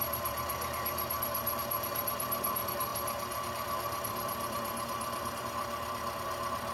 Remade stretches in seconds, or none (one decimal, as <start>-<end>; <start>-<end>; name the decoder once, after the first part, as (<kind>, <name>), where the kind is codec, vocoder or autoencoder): 0.0-6.7 (vocoder, BigVGAN v2)

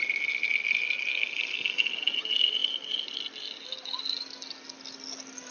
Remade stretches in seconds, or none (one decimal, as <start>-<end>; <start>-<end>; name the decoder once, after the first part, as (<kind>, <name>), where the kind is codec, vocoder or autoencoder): none